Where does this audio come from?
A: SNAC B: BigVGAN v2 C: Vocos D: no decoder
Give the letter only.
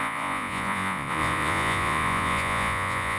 C